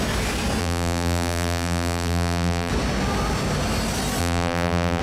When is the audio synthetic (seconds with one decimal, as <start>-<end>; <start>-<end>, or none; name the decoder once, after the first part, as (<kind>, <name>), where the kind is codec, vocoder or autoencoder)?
0.6-2.7 (vocoder, BigVGAN v2); 4.2-5.0